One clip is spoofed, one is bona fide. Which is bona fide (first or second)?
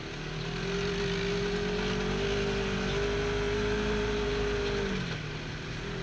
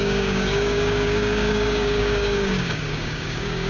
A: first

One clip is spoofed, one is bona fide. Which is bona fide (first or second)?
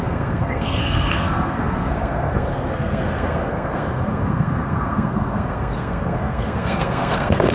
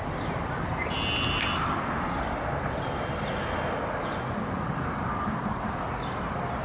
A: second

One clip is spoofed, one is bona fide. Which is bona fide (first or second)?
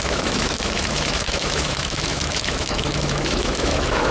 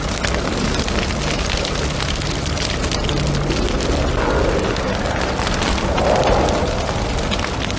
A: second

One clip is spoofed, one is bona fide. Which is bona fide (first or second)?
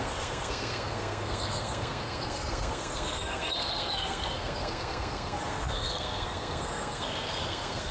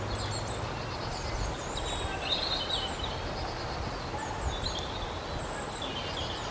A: second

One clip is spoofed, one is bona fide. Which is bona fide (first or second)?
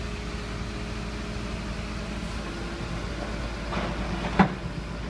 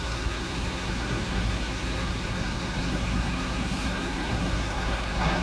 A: first